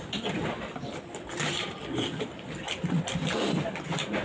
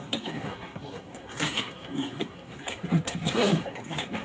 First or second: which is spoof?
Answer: second